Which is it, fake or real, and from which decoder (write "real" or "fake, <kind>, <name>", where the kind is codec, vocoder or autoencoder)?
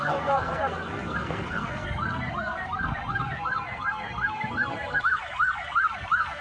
fake, codec, SNAC